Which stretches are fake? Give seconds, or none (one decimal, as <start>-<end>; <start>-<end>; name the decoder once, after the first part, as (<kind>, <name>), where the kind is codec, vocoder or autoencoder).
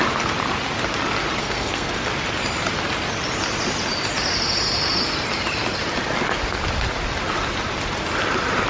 1.4-2.1 (codec, SNAC)